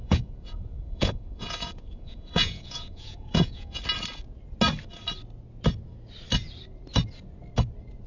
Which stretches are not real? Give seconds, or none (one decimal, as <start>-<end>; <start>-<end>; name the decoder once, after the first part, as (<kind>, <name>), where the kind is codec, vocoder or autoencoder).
0.0-3.8 (vocoder, Vocos)